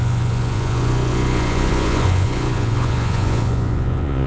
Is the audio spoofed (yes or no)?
yes